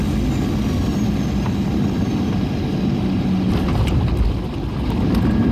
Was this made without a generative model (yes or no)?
yes